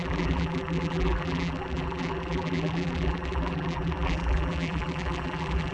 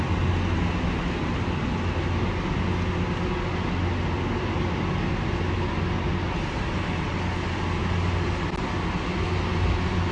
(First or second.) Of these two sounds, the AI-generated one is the first